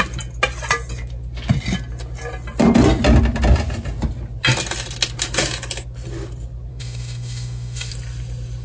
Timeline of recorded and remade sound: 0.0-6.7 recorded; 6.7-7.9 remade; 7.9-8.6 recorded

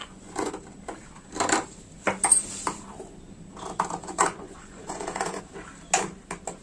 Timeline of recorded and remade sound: 0.0-0.5 remade; 0.5-4.0 recorded; 4.0-5.4 remade; 5.4-6.6 recorded

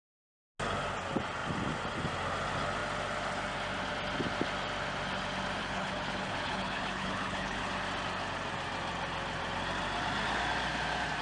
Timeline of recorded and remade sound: 0.0-5.6 recorded; 5.6-7.7 remade; 7.7-11.2 recorded

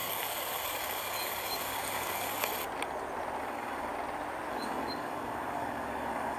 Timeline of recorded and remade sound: 0.0-2.5 remade; 2.5-3.4 recorded; 3.4-3.9 remade; 3.9-4.5 recorded; 4.5-6.4 remade

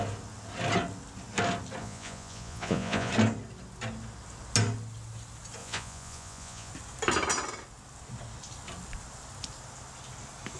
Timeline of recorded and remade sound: 0.0-1.8 recorded; 1.8-3.1 remade; 3.1-5.6 recorded; 5.6-6.7 remade; 6.7-10.6 recorded

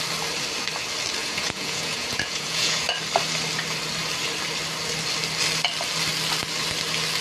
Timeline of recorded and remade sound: 0.0-1.2 recorded; 1.2-2.8 remade; 2.8-7.2 recorded